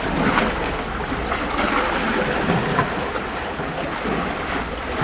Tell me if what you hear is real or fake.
real